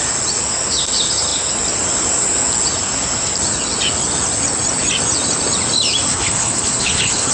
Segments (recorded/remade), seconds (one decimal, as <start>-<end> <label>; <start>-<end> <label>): 0.0-6.1 recorded; 6.1-7.3 remade

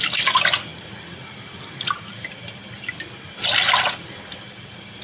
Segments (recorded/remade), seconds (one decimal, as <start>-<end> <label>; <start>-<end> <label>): 0.0-5.0 recorded

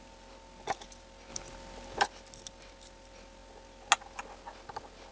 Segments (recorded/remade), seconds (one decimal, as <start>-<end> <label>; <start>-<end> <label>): 0.0-5.1 recorded

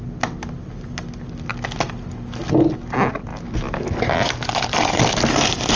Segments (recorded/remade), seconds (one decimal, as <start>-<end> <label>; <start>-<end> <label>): 0.0-3.3 recorded; 3.3-4.3 remade; 4.3-5.8 recorded

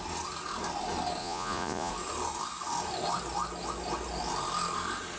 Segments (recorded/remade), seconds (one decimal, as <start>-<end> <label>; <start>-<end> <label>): 0.0-1.2 recorded; 1.2-1.9 remade; 1.9-5.2 recorded

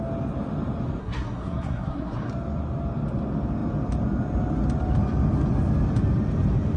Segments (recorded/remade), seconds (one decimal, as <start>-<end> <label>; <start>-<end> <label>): 0.0-1.0 recorded; 1.0-2.3 remade; 2.3-6.8 recorded

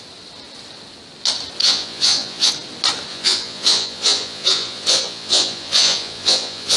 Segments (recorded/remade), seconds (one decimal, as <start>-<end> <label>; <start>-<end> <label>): 0.0-1.6 recorded; 1.6-2.5 remade; 2.5-3.1 recorded; 3.1-6.8 remade

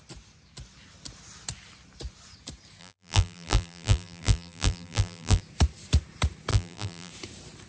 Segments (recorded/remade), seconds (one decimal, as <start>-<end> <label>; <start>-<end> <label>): 0.0-2.8 recorded; 2.8-5.4 remade; 5.4-6.5 recorded; 6.5-7.1 remade; 7.1-7.7 recorded